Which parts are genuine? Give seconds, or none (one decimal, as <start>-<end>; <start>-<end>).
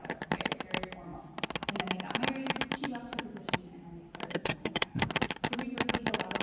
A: 0.0-4.3; 5.0-6.4